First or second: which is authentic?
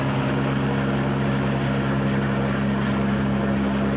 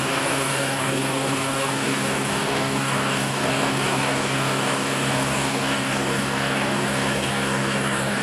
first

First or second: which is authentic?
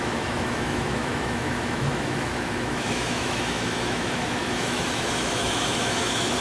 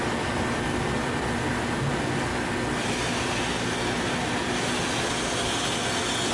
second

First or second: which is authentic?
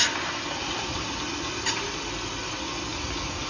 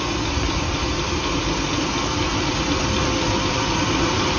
first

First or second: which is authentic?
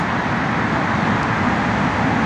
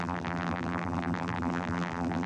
first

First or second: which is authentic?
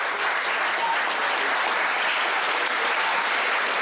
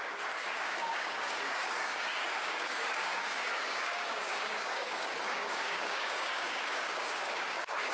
first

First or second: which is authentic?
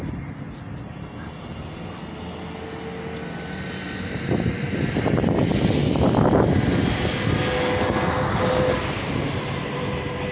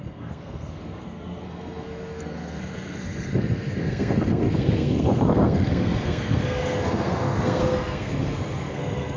first